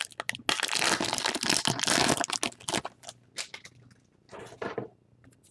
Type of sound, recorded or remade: recorded